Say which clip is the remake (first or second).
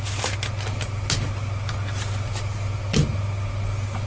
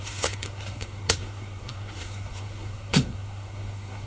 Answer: second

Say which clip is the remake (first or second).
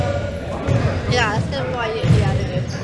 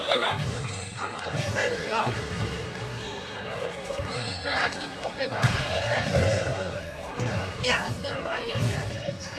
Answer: second